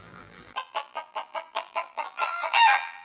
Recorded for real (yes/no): no